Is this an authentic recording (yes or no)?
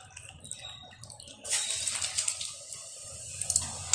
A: yes